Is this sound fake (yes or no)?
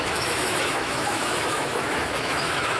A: yes